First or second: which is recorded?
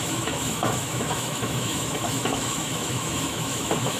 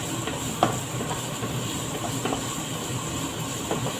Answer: second